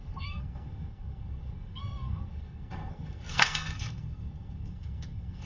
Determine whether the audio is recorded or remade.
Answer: remade